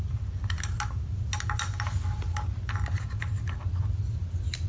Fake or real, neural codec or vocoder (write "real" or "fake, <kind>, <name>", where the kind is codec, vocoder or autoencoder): real